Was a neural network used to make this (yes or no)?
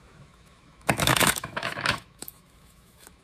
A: yes